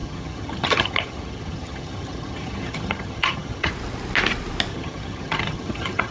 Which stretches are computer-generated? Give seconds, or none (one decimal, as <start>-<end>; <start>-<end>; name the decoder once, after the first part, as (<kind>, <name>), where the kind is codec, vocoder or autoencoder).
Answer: 0.0-3.7 (vocoder, HiFi-GAN); 4.7-6.1